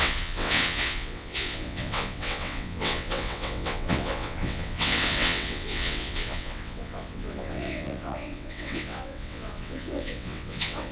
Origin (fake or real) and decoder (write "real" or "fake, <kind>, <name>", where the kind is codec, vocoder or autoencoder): fake, vocoder, WaveNeXt